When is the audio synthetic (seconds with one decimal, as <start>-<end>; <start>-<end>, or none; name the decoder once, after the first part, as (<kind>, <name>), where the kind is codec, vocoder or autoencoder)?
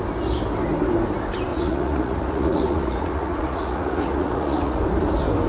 1.5-4.8 (vocoder, Vocos)